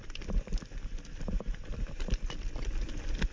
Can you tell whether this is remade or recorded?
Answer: recorded